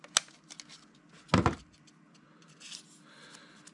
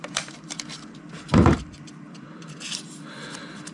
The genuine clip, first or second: first